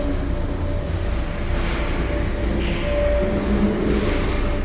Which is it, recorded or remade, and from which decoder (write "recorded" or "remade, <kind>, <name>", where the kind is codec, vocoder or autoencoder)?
recorded